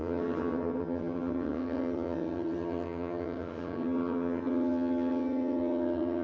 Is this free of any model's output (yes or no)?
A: no